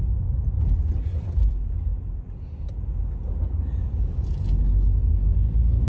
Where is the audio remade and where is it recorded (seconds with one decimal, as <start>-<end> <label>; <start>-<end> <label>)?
0.0-5.9 recorded

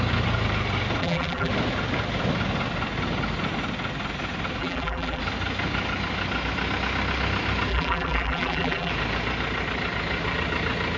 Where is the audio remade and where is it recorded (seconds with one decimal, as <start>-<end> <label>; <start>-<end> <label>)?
0.0-1.0 recorded; 1.0-1.5 remade; 1.5-4.6 recorded; 4.6-5.2 remade; 5.2-7.7 recorded; 7.7-8.9 remade; 8.9-11.0 recorded

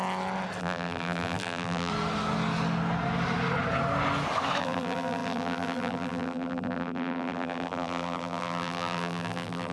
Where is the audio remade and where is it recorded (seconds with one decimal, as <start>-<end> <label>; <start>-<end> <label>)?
0.0-0.6 recorded; 0.6-1.9 remade; 1.9-4.6 recorded; 4.6-9.7 remade

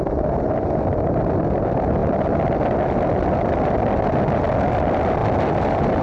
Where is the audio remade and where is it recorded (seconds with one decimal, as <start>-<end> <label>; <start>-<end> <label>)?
0.0-5.2 recorded; 5.2-6.0 remade

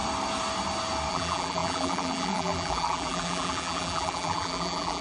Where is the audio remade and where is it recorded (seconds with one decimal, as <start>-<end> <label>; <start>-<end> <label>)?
0.0-1.1 recorded; 1.1-5.0 remade

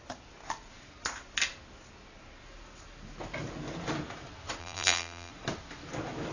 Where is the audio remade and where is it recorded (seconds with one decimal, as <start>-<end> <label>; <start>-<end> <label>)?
0.0-4.6 recorded; 4.6-5.3 remade; 5.3-6.3 recorded

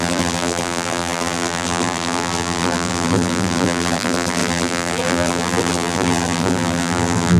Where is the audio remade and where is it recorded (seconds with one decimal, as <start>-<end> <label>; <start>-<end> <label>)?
0.0-7.4 remade

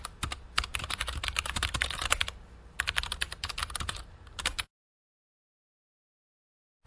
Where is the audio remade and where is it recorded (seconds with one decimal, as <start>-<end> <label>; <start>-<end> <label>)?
0.0-0.7 recorded; 0.7-2.1 remade; 2.1-3.6 recorded; 3.6-6.3 remade; 6.3-6.9 recorded